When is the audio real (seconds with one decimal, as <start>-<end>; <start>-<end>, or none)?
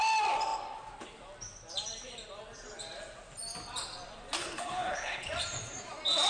0.0-4.4; 5.3-6.3